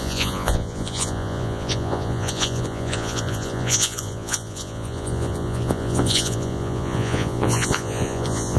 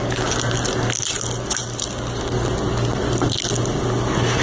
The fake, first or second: first